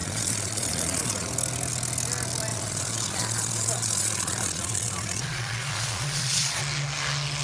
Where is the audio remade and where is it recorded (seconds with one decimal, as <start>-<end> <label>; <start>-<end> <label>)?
0.0-1.3 remade; 1.3-2.5 recorded; 2.5-6.6 remade; 6.6-7.4 recorded